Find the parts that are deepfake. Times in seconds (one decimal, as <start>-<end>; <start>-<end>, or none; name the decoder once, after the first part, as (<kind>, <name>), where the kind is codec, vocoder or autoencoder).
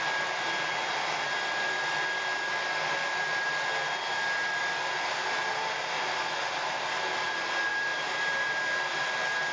3.0-4.6 (vocoder, BigVGAN v2); 7.7-9.5